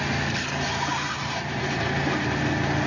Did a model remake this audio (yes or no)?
no